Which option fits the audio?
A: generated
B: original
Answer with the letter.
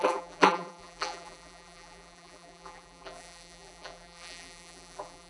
A